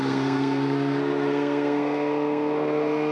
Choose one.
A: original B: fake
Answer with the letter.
B